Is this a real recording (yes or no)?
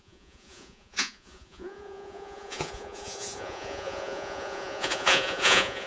no